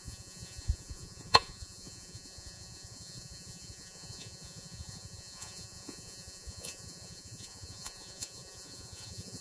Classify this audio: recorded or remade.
remade